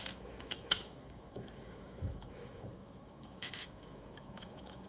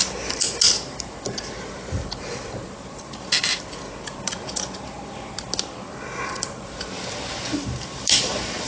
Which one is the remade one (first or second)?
first